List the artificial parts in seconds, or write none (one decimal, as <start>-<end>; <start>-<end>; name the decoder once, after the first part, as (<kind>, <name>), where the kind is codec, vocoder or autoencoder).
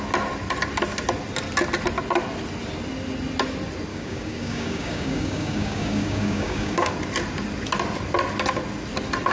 3.9-6.9 (codec, DAC)